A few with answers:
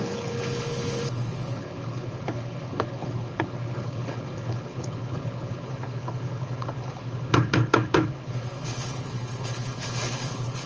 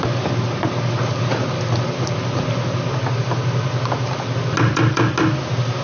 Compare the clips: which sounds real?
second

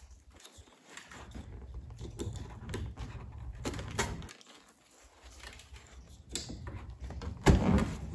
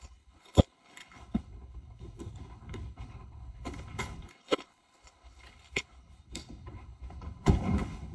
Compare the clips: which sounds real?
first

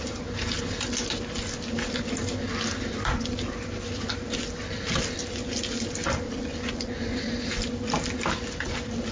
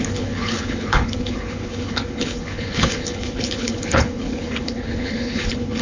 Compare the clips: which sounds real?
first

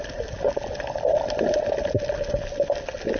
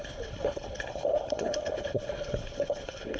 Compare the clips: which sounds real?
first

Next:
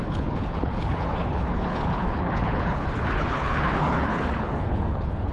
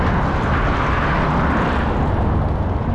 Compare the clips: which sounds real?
second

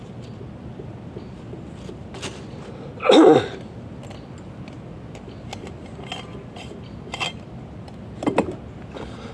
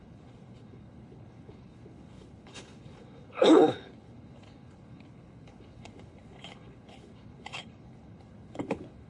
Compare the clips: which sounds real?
first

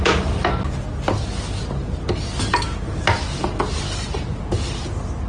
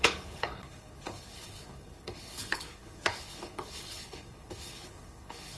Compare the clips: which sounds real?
first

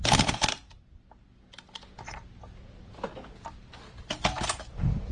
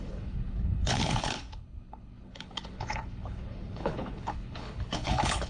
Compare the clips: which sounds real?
first